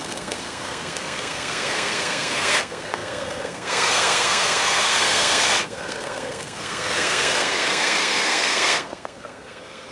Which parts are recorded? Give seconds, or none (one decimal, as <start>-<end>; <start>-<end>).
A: none